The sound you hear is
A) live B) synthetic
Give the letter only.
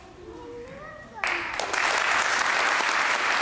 A